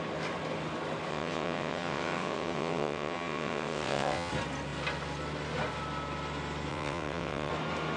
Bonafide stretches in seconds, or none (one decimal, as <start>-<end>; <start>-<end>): 0.0-1.1; 4.3-6.7; 7.5-8.0